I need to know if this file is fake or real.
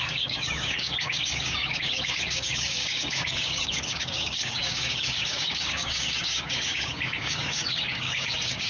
fake